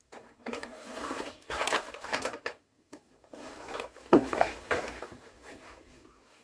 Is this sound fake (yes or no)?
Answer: yes